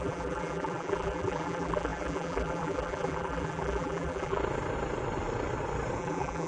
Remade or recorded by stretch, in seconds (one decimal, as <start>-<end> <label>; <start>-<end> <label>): 0.0-4.4 remade; 4.4-6.0 recorded; 6.0-6.5 remade